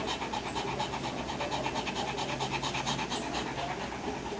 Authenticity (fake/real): real